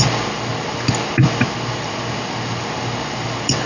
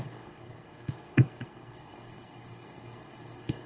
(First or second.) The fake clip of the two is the second